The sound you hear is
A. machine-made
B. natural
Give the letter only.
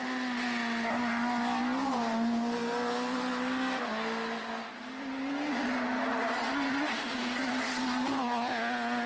B